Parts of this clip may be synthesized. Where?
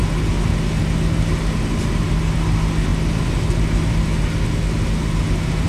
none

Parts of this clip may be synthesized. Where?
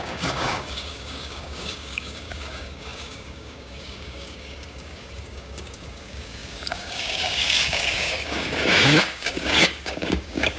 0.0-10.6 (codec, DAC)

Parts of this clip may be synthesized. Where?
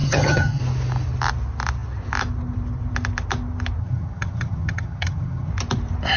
0.0-0.6 (vocoder, HiFi-GAN); 3.8-5.5